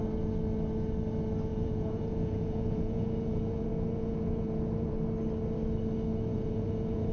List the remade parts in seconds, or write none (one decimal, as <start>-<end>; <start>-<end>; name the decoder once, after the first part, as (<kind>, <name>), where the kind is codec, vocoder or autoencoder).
1.5-4.9 (vocoder, Vocos); 6.3-7.1